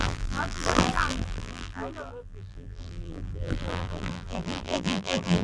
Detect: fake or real fake